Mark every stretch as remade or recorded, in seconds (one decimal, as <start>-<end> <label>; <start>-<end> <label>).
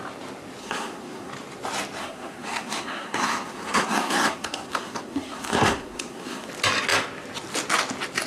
0.0-0.6 recorded; 0.6-1.3 remade; 1.3-2.0 recorded; 2.0-6.5 remade; 6.5-8.3 recorded